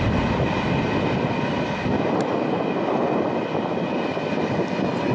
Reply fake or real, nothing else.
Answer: real